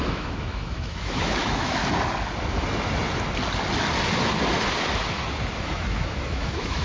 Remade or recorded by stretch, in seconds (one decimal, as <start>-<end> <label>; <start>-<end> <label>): 0.0-1.8 remade; 1.8-5.6 recorded; 5.6-6.8 remade